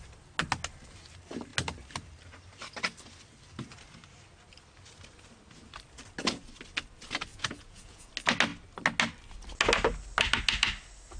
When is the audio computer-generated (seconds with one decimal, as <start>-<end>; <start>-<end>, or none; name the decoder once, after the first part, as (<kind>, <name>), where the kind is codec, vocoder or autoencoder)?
7.3-8.1 (vocoder, Vocos)

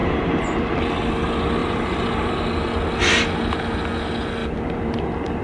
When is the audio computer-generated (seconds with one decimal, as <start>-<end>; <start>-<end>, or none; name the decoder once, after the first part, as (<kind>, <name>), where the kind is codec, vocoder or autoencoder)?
0.0-0.9 (vocoder, BigVGAN v2); 1.6-2.3; 4.4-5.0

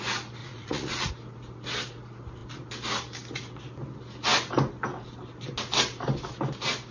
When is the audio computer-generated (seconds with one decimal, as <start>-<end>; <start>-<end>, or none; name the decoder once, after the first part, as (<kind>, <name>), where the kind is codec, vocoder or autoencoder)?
0.4-1.1 (vocoder, Vocos)

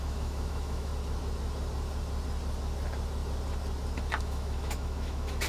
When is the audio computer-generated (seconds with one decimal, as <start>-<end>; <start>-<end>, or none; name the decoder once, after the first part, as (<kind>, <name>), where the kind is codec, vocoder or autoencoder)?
0.0-0.9 (autoencoder, DAC-VAE); 4.2-5.5